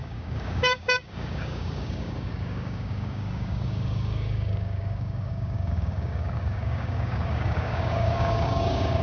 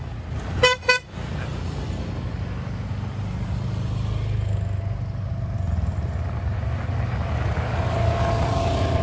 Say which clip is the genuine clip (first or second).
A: second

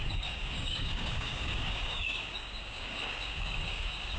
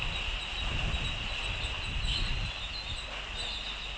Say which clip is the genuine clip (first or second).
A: second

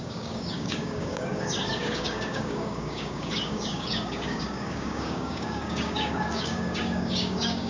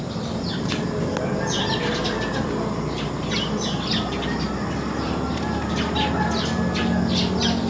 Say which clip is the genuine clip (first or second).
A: second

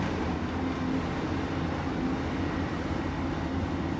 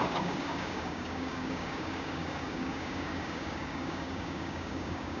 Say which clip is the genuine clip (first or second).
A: first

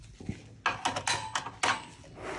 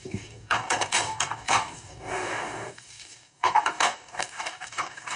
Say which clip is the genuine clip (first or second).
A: first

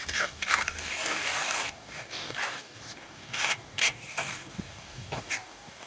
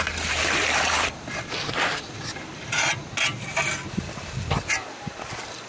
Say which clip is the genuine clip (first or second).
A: second